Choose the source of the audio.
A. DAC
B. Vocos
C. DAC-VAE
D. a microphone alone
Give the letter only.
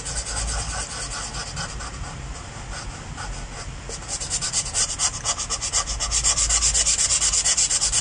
D